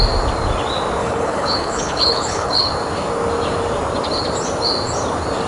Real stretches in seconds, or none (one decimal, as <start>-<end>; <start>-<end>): 0.0-1.0; 2.7-5.5